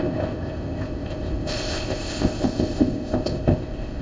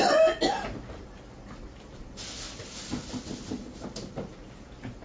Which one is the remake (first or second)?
first